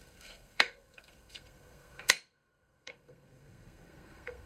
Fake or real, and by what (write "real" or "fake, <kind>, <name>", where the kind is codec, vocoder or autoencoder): fake, codec, SNAC